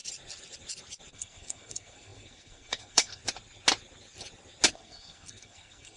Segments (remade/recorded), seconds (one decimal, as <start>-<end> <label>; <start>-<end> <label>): 0.0-1.1 recorded; 1.1-3.2 remade; 3.2-4.7 recorded; 4.7-6.0 remade